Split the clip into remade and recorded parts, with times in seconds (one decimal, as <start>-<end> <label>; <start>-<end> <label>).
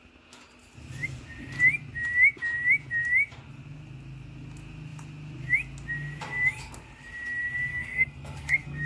0.0-7.7 recorded; 7.7-8.9 remade